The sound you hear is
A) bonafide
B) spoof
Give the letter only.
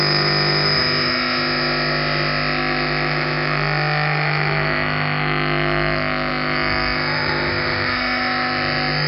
B